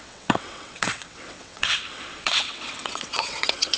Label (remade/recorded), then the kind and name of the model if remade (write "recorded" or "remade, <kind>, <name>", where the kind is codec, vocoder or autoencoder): remade, vocoder, WaveNeXt